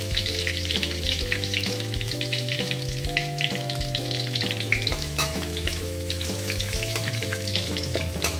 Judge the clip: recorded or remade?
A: remade